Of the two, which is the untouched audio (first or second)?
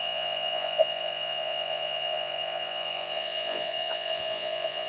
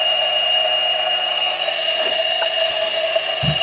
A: second